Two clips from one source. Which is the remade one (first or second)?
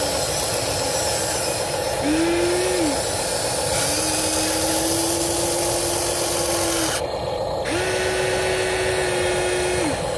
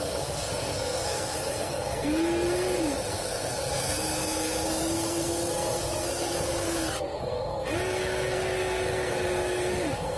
second